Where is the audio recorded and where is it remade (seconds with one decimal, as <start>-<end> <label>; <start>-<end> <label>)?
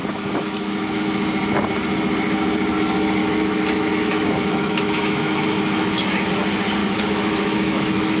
0.0-1.0 remade; 1.0-3.2 recorded; 3.2-6.3 remade; 6.3-6.8 recorded; 6.8-8.2 remade